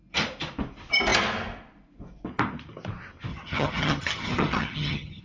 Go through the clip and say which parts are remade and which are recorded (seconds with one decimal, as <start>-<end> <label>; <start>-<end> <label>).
0.0-3.3 recorded; 3.3-5.2 remade